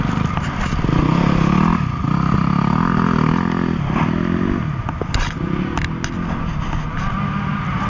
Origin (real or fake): real